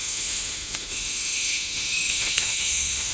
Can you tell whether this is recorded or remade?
remade